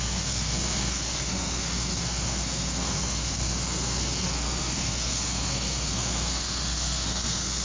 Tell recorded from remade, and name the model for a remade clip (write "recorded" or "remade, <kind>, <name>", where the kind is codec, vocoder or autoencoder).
remade, codec, SNAC